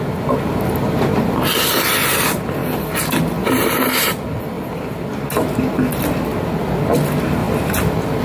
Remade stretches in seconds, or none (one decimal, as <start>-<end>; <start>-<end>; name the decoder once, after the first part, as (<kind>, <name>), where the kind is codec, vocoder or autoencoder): none